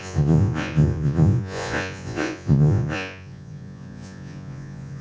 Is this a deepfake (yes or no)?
yes